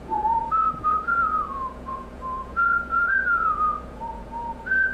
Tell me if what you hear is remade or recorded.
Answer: remade